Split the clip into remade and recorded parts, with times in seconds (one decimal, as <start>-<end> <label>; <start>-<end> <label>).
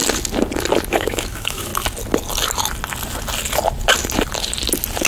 0.0-0.9 recorded; 0.9-1.7 remade; 1.7-5.1 recorded